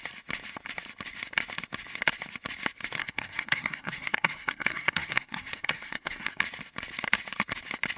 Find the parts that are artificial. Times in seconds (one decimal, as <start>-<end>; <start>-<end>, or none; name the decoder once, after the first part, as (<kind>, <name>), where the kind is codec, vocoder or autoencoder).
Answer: 3.0-6.4 (codec, SNAC)